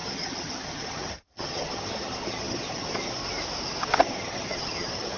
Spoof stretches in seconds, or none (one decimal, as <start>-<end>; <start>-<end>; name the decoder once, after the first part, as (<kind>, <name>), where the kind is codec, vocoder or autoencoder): 0.0-3.2 (vocoder, HiFi-GAN); 3.8-5.2